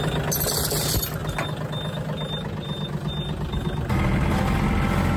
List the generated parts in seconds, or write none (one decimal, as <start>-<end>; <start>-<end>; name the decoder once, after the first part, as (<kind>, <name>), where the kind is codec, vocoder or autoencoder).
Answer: none